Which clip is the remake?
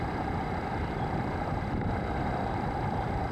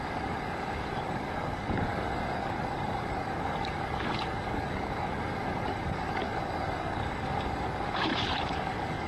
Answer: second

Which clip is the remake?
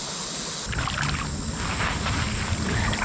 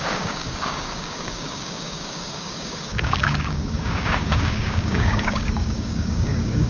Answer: second